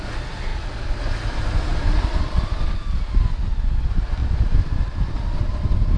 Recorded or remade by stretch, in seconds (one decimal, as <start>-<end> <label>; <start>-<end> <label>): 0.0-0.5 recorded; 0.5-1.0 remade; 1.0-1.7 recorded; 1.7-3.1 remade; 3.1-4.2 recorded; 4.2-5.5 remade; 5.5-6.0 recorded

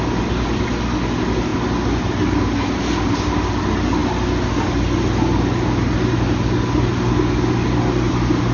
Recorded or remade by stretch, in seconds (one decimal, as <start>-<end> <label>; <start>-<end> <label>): 0.0-8.5 recorded

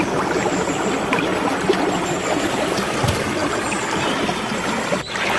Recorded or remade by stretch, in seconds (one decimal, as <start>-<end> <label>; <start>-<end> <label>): 0.0-3.4 recorded; 3.4-5.0 remade; 5.0-5.4 recorded

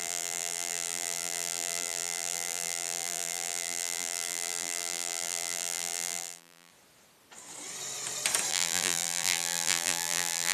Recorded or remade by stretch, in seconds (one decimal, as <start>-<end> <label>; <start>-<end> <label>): 0.0-6.7 remade; 6.7-8.5 recorded; 8.5-10.5 remade

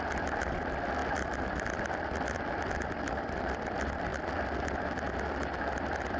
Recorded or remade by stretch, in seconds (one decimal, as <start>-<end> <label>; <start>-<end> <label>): 0.0-1.0 remade; 1.0-2.3 recorded; 2.3-4.1 remade; 4.1-5.7 recorded; 5.7-6.2 remade